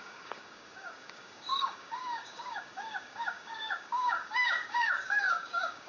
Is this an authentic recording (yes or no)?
no